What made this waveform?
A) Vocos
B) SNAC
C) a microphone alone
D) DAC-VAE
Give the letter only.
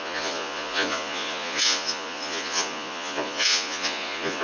A